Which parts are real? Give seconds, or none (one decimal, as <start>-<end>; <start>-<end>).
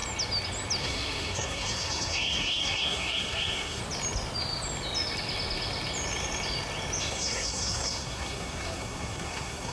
0.0-0.8; 3.8-7.0